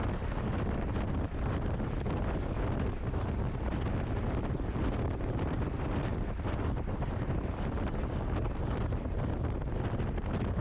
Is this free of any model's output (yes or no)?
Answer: yes